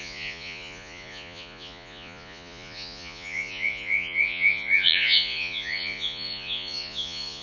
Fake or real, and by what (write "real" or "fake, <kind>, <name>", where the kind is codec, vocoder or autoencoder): fake, vocoder, Vocos